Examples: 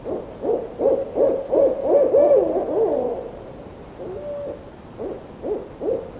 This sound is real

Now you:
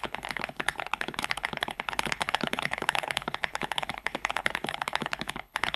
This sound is fake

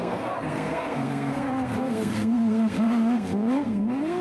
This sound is fake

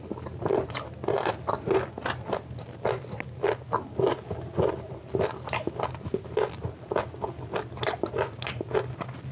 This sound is real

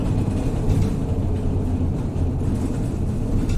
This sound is real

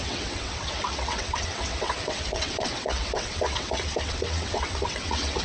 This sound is fake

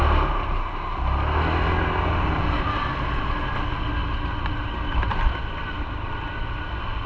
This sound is real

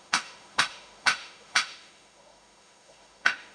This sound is fake